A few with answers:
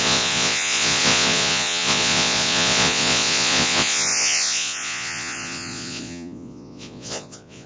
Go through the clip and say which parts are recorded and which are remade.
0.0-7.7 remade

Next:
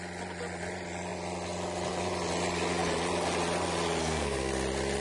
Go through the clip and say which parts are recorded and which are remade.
0.0-4.0 recorded; 4.0-4.5 remade; 4.5-5.0 recorded

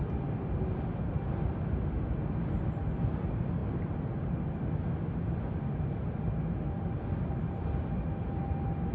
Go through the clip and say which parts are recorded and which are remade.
0.0-8.9 recorded

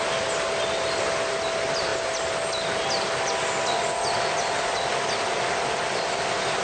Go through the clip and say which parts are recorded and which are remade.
0.0-6.6 recorded

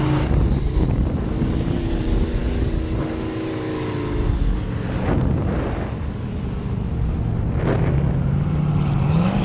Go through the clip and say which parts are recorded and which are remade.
0.0-9.4 recorded

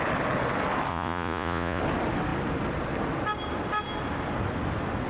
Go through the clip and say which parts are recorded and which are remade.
0.0-0.9 recorded; 0.9-1.8 remade; 1.8-5.1 recorded

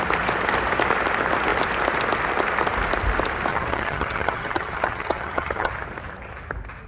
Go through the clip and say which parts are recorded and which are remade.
0.0-3.5 recorded; 3.5-5.7 remade; 5.7-6.9 recorded

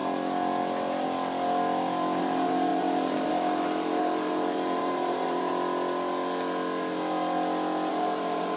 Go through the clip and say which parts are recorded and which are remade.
0.0-2.2 recorded; 2.2-5.5 remade; 5.5-7.9 recorded; 7.9-8.6 remade